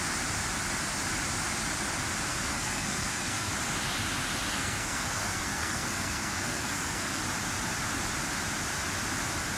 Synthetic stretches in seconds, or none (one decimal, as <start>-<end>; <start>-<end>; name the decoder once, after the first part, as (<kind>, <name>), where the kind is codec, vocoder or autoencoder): 2.3-3.5 (codec, SNAC); 4.5-7.2

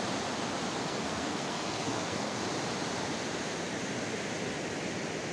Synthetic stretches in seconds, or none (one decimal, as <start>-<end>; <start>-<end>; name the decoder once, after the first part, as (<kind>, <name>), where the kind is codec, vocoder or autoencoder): 0.8-2.4 (codec, SNAC)

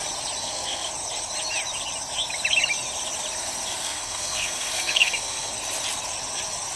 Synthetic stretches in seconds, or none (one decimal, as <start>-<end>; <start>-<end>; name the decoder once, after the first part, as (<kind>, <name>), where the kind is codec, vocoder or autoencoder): 0.4-0.9 (codec, SNAC); 3.8-5.5

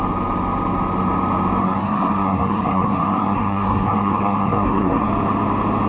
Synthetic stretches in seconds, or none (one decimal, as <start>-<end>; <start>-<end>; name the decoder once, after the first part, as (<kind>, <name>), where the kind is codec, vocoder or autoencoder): 1.6-5.1 (codec, SNAC)